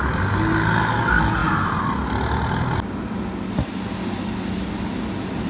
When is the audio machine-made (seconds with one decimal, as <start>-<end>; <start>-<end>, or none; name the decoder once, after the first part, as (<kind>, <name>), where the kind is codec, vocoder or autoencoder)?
none